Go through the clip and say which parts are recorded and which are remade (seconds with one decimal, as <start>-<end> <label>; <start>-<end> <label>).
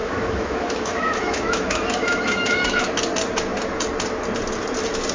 0.0-2.8 remade; 2.8-5.1 recorded